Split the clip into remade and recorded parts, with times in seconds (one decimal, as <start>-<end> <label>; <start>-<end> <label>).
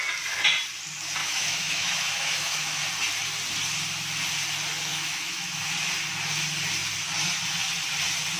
0.0-1.2 recorded; 1.2-2.8 remade; 2.8-4.9 recorded; 4.9-5.7 remade; 5.7-8.4 recorded